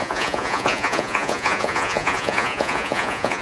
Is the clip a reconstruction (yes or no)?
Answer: yes